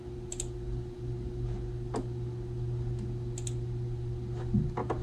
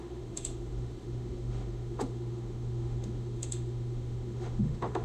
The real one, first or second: first